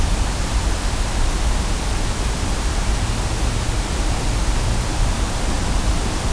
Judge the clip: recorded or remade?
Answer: recorded